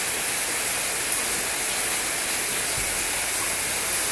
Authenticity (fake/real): real